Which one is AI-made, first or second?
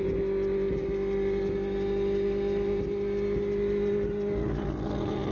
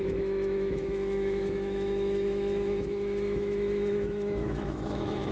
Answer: second